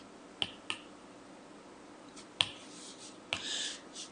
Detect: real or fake real